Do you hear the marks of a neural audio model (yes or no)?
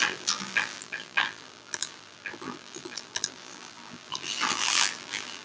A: yes